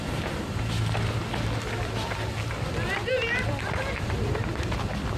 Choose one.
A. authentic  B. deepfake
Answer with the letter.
A